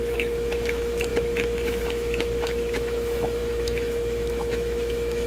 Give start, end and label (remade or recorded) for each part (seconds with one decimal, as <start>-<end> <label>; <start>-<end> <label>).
0.0-5.3 remade